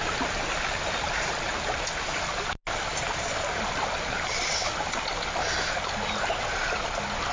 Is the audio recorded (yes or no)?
yes